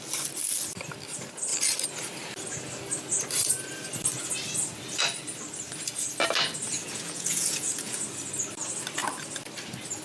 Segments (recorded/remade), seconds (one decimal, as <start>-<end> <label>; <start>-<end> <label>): 0.0-6.8 recorded; 6.8-8.0 remade; 8.0-10.0 recorded